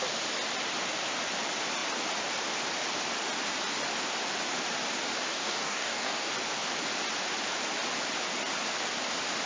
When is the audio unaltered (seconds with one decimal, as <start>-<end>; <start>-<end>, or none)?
0.0-5.3; 6.3-9.5